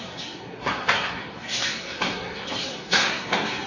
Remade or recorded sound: remade